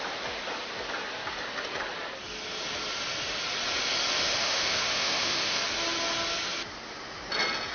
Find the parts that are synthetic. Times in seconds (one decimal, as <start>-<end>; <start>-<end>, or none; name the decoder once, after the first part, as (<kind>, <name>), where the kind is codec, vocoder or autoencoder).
4.4-5.6 (autoencoder, DAC-VAE)